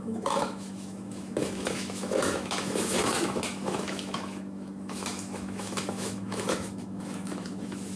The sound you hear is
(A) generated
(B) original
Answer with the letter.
A